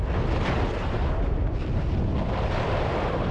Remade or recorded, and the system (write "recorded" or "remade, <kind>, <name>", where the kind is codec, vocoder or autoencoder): recorded